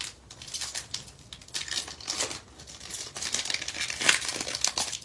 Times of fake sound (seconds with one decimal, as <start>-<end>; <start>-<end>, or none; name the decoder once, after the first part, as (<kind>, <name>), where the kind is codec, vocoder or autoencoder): none